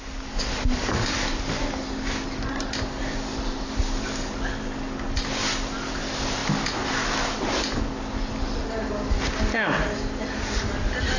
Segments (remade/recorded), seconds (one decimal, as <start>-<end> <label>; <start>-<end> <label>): 0.0-11.2 recorded